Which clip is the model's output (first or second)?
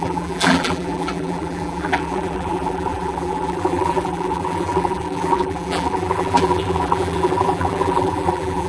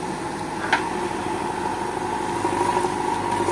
first